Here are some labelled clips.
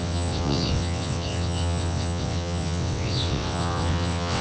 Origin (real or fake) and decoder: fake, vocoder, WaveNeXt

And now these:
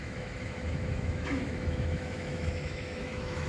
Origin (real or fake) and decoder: fake, autoencoder, DAC-VAE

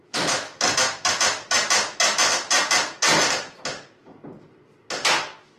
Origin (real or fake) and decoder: real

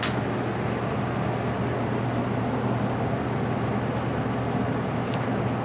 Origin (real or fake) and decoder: real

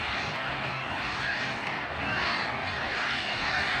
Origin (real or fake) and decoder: fake, codec, DAC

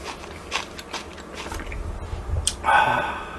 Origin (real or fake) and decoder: real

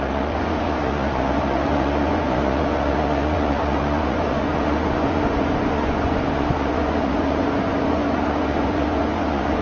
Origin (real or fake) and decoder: fake, vocoder, Vocos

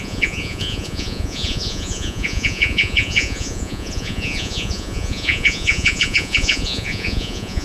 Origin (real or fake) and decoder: fake, vocoder, Vocos